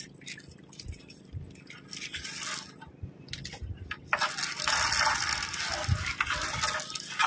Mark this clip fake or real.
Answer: real